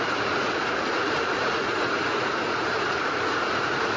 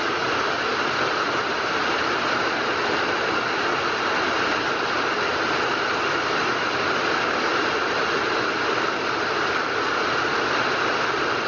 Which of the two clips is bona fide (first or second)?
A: second